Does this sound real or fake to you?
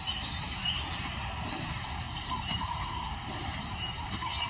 fake